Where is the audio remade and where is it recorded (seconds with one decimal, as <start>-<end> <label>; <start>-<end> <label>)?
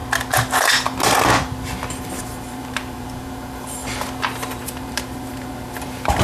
0.0-2.0 recorded; 2.0-3.8 remade; 3.8-4.5 recorded; 4.5-6.2 remade